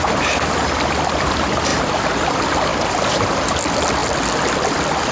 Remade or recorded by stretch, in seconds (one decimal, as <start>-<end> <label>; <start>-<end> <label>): 0.0-5.1 recorded